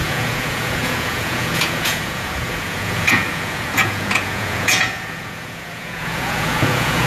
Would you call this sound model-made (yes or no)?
yes